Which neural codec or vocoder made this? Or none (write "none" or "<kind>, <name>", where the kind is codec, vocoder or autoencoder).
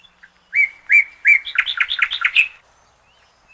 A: none